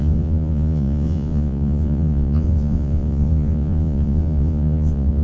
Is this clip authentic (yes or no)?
no